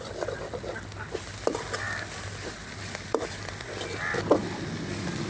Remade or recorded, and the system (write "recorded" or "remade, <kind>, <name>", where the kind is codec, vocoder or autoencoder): recorded